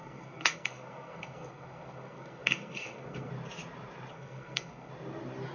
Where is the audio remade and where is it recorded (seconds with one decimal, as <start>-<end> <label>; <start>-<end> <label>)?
0.0-3.3 remade; 3.3-4.1 recorded; 4.1-4.9 remade; 4.9-5.5 recorded